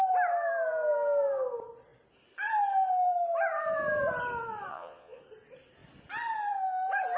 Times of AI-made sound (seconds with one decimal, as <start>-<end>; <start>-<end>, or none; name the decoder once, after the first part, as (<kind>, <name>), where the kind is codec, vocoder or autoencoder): 4.7-5.2 (vocoder, Vocos)